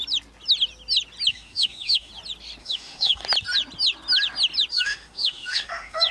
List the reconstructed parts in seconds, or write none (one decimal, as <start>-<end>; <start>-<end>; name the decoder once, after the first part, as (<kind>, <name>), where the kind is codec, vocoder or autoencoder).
1.3-2.1 (autoencoder, DAC-VAE); 2.6-3.2; 4.7-6.1